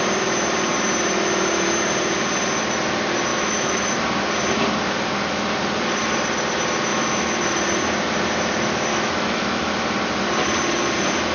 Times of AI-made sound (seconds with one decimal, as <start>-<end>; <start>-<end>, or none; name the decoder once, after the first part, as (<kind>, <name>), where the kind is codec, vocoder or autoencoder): 3.3-4.0 (autoencoder, DAC-VAE); 6.9-7.4; 8.9-9.7